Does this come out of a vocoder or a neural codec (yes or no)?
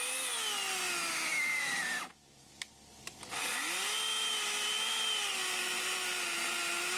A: no